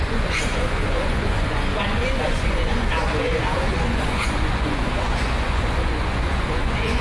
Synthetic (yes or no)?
yes